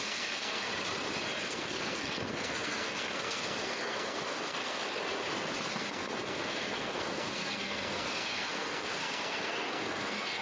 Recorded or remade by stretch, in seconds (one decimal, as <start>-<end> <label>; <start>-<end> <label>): 0.0-0.7 remade; 0.7-1.4 recorded; 1.4-5.0 remade; 5.0-5.8 recorded; 5.8-10.4 remade